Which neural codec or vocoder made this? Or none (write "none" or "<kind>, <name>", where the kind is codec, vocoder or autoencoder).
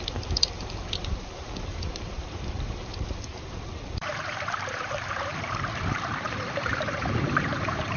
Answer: vocoder, BigVGAN v2